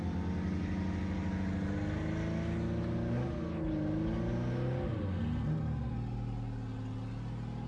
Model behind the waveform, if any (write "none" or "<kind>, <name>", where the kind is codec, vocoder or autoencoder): none